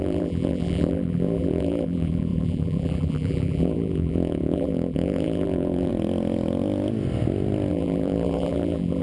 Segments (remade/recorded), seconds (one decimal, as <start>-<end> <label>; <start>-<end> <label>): 0.0-5.9 remade; 5.9-7.7 recorded; 7.7-9.0 remade